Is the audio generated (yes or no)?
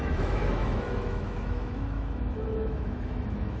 yes